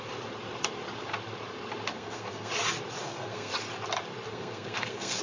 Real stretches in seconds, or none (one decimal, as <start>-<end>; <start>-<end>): 0.0-1.9; 2.5-3.0; 3.5-4.3